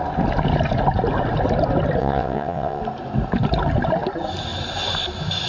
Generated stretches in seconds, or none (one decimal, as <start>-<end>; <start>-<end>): 2.0-2.8